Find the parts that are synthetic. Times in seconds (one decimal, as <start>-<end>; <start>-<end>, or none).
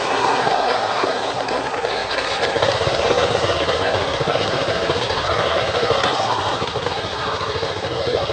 0.0-8.3